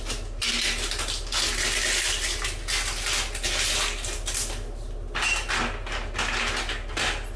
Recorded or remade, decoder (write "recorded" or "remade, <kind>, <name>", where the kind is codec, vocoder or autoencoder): recorded